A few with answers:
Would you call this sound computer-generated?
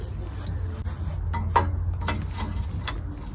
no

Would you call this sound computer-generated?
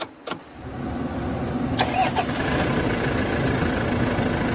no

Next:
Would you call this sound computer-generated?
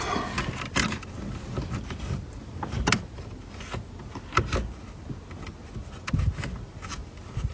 no